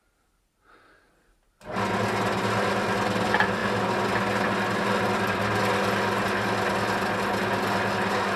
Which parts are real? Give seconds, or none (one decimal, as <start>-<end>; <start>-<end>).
0.0-8.4